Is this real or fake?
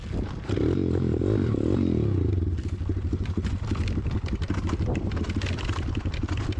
real